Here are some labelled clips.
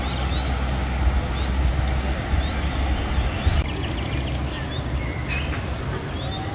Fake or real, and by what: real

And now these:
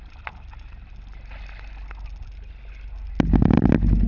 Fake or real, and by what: real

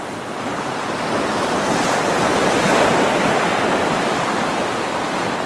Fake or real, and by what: real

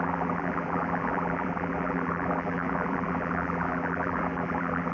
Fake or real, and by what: fake, vocoder, BigVGAN v2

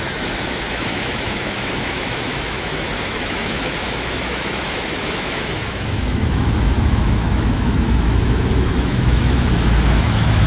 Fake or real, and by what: fake, autoencoder, DAC-VAE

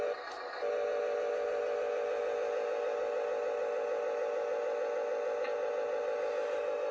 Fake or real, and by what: real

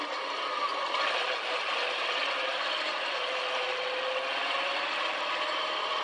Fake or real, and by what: real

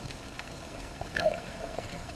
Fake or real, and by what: fake, codec, SNAC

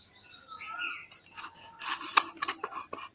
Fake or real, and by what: real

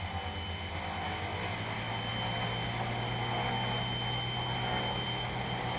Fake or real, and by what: real